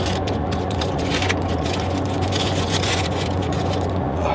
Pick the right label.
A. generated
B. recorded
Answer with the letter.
A